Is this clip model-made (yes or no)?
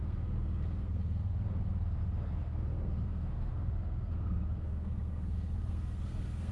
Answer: yes